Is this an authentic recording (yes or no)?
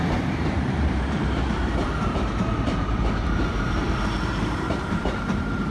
no